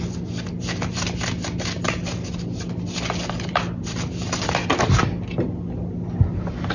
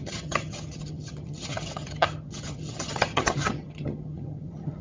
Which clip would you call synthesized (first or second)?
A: second